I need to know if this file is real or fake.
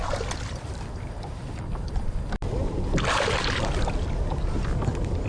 real